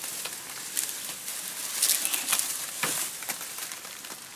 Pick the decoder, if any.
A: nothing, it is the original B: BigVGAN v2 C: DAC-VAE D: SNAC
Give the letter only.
A